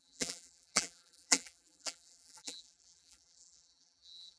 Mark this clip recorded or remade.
remade